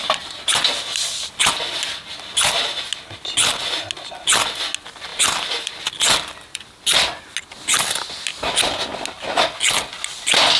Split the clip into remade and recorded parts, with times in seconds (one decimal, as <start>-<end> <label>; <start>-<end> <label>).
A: 0.0-5.1 recorded; 5.1-7.2 remade; 7.2-10.6 recorded